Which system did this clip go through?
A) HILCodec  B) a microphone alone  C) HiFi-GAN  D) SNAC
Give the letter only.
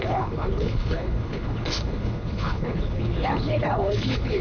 A